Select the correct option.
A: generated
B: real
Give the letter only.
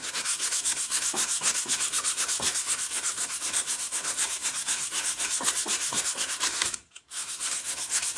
A